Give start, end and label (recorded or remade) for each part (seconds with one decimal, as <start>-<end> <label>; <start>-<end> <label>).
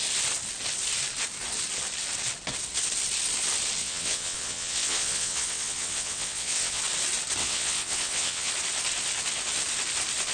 0.0-3.8 recorded; 3.8-6.8 remade; 6.8-7.4 recorded; 7.4-8.5 remade; 8.5-10.3 recorded